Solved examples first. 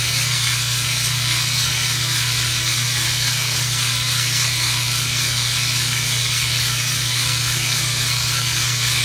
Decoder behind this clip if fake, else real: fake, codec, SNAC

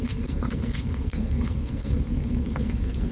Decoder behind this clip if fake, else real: fake, codec, SNAC